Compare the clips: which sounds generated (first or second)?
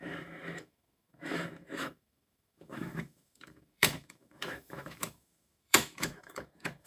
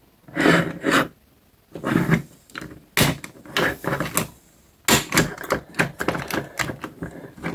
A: first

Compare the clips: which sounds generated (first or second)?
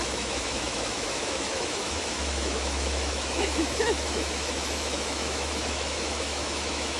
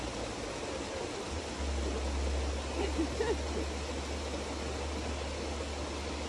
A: first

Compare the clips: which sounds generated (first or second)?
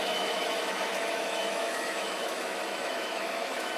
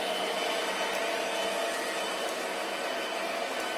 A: first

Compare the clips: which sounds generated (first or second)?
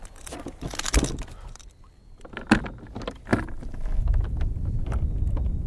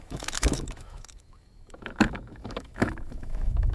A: second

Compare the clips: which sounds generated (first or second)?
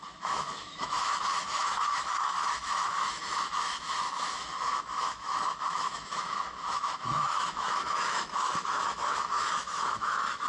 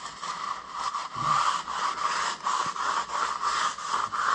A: first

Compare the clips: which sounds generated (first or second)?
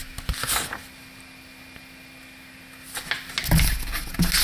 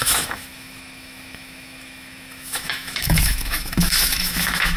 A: second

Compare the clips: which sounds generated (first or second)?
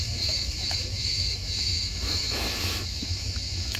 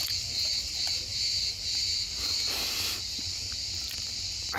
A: first